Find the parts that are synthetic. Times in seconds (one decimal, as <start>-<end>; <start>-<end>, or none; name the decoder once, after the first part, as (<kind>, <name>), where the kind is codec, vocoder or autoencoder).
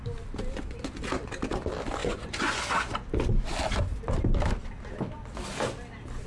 2.0-2.6 (vocoder, Vocos)